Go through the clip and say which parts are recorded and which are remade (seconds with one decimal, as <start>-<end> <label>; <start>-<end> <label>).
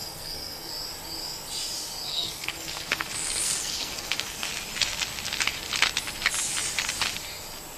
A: 0.0-0.7 remade; 0.7-2.1 recorded; 2.1-4.5 remade; 4.5-7.8 recorded